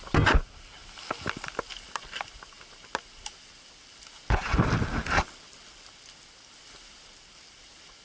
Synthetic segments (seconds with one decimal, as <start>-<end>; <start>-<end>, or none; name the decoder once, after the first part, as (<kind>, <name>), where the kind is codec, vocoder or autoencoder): none